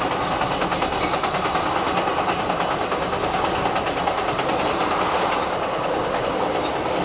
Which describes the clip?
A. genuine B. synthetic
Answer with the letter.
A